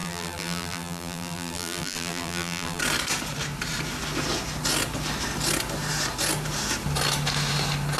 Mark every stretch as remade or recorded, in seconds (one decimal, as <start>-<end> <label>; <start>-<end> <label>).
0.0-2.8 remade; 2.8-8.0 recorded